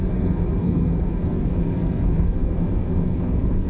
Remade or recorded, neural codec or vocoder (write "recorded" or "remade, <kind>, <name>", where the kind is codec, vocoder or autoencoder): remade, codec, SNAC